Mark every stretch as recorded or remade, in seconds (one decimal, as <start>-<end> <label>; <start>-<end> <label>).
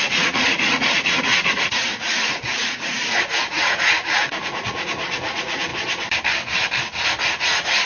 0.0-3.0 remade; 3.0-3.5 recorded; 3.5-5.7 remade; 5.7-7.4 recorded; 7.4-7.9 remade